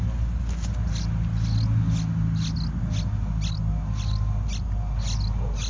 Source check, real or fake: real